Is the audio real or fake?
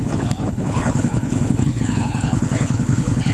fake